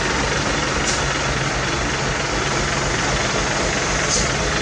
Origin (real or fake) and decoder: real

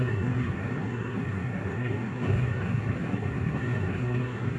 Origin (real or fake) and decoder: fake, codec, SNAC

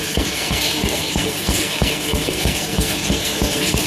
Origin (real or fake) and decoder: fake, codec, SNAC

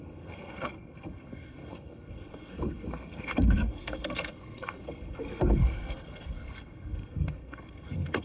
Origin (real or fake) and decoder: fake, codec, SNAC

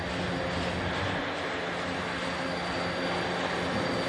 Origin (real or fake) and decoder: real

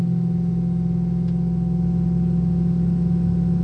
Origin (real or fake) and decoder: real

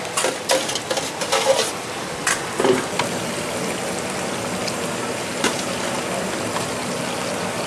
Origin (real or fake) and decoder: real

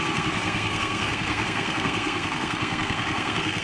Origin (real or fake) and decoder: fake, codec, SNAC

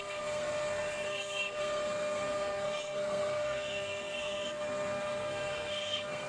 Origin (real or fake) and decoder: fake, codec, SNAC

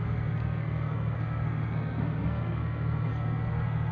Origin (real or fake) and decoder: fake, codec, SNAC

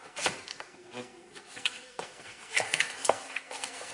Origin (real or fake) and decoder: fake, codec, SNAC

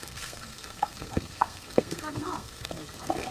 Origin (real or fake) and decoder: fake, codec, SNAC